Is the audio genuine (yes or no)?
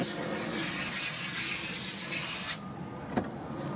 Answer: yes